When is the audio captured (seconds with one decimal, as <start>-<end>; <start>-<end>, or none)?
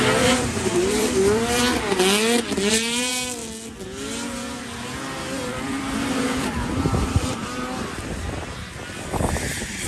1.7-2.7; 3.1-5.5; 7.4-9.5